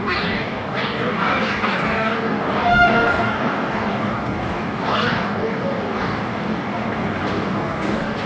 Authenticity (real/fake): fake